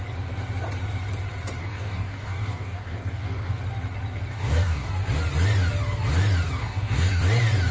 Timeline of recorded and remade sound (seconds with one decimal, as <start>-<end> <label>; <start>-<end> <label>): 0.0-1.6 recorded; 1.6-3.6 remade; 3.6-4.3 recorded; 4.3-4.9 remade; 4.9-6.6 recorded; 6.6-7.2 remade; 7.2-7.7 recorded